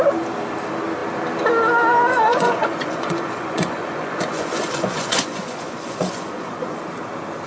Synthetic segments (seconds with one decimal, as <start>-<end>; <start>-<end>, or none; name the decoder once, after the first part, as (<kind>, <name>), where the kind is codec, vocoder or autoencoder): 2.3-6.8 (vocoder, Vocos)